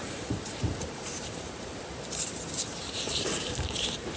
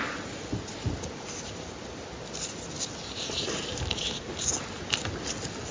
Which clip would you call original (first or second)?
second